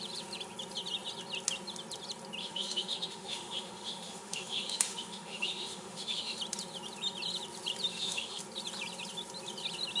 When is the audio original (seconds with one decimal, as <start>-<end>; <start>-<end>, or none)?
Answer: 0.0-2.4; 6.4-7.9; 8.4-10.0